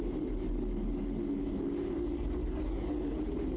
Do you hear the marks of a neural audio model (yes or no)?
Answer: no